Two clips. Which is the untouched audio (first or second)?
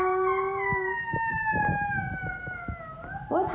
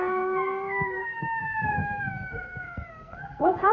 first